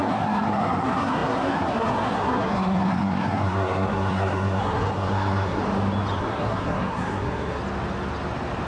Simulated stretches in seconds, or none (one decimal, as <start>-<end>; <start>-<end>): 0.0-5.6; 6.2-7.6